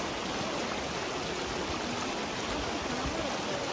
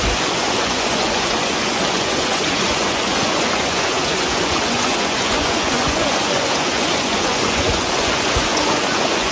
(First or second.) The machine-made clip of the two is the second